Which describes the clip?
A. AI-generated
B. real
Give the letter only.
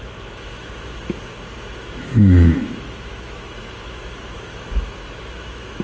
A